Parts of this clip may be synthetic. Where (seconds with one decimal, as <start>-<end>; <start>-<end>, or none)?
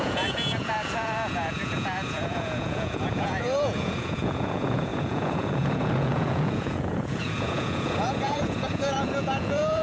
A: 0.0-9.8